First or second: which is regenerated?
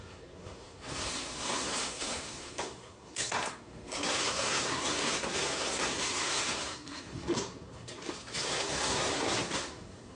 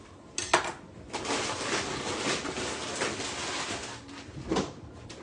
first